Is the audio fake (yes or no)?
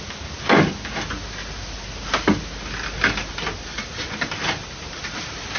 no